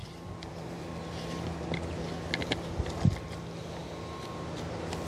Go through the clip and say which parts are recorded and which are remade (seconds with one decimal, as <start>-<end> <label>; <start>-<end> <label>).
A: 0.0-0.8 remade; 0.8-5.1 recorded